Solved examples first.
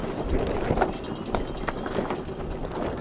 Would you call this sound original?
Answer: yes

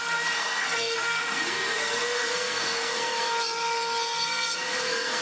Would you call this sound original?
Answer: no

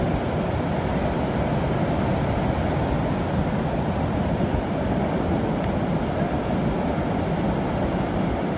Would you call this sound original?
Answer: yes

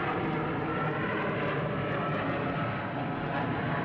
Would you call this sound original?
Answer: yes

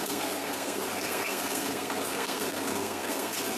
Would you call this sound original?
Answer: no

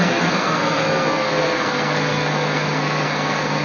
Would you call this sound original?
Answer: no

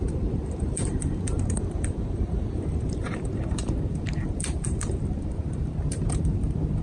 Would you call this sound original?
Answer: no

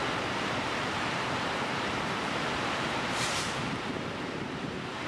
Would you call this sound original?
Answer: no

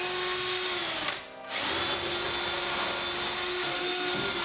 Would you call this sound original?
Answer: yes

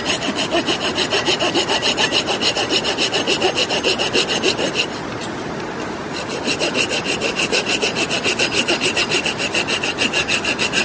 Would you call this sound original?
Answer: yes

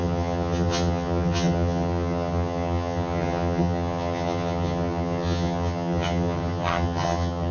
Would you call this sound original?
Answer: no